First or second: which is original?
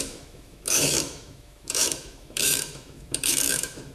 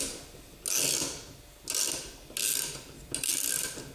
second